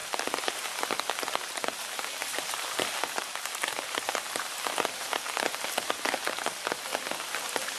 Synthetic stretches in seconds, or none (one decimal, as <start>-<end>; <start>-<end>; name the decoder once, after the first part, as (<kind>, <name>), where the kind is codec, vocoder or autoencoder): 0.0-0.5 (vocoder, BigVGAN v2); 2.2-5.1